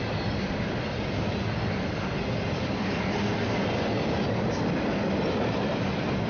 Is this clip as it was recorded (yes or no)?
yes